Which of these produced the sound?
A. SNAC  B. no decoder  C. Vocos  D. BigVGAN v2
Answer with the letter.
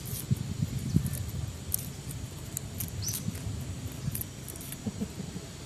B